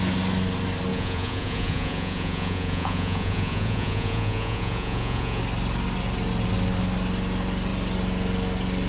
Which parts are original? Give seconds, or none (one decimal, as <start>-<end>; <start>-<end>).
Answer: 0.0-0.9; 5.4-8.9